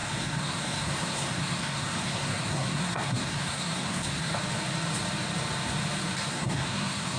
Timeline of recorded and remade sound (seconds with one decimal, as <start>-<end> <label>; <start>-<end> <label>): 0.0-4.3 remade; 4.3-6.3 recorded; 6.3-7.2 remade